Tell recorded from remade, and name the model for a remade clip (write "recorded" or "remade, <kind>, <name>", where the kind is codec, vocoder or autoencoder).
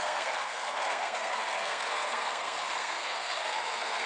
remade, codec, SNAC